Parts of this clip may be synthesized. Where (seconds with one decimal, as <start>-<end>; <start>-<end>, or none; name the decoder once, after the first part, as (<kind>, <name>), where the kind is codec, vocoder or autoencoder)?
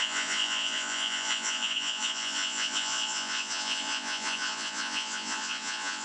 0.0-6.0 (vocoder, Vocos)